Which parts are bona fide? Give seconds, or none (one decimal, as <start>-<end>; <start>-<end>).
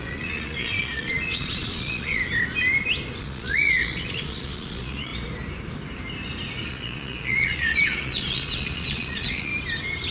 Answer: 2.2-3.2; 5.1-6.7; 9.5-10.1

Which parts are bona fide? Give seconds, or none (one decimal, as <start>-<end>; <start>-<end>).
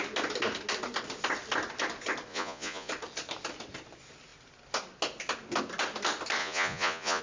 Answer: 0.0-2.3; 2.9-6.4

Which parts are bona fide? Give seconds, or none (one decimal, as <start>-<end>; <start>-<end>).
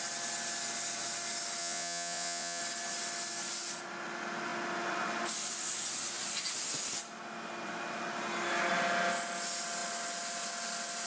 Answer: 0.0-1.6; 2.6-11.1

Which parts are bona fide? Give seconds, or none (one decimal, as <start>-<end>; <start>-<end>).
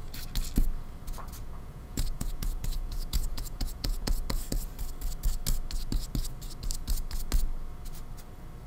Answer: 0.0-1.4; 4.1-8.7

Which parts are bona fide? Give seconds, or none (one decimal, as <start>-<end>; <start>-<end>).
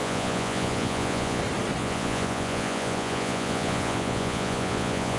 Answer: 1.4-1.8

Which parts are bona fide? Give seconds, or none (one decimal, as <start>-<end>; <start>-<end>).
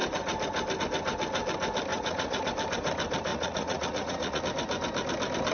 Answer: 0.0-1.9; 2.5-3.3; 4.4-5.5